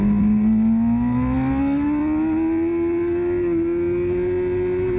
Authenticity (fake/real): real